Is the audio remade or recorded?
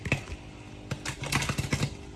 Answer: recorded